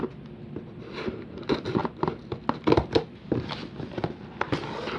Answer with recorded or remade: recorded